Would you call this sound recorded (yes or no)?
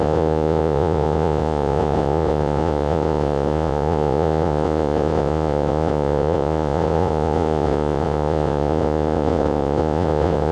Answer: no